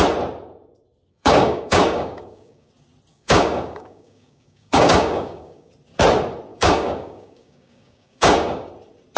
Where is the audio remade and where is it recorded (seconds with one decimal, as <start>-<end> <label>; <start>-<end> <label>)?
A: 0.0-1.1 recorded; 1.1-2.7 remade; 2.7-3.1 recorded; 3.1-5.7 remade; 5.7-6.5 recorded; 6.5-8.7 remade; 8.7-9.2 recorded